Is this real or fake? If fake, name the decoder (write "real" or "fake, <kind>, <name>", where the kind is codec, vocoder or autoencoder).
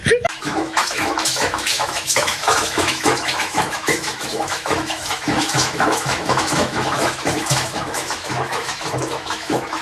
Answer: fake, autoencoder, DAC-VAE